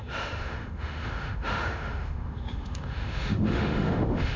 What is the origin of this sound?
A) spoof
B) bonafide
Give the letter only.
A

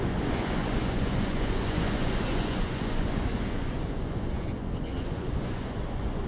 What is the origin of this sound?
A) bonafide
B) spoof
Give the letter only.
B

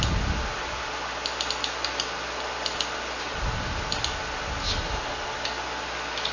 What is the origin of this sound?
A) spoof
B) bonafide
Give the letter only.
B